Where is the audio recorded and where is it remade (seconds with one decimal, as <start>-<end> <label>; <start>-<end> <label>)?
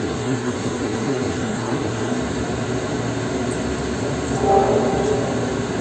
0.0-2.2 remade; 2.2-5.8 recorded